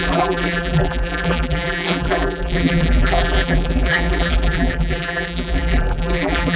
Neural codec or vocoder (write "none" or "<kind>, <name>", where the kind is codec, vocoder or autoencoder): vocoder, BigVGAN v2